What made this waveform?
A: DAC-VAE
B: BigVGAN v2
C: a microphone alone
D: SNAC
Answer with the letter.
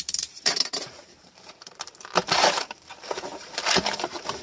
B